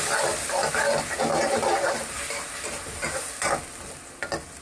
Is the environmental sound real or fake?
real